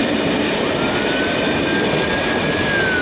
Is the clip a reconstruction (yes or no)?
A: no